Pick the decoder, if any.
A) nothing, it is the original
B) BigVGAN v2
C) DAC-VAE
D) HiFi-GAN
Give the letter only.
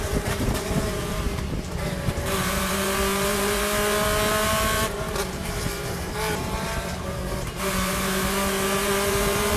B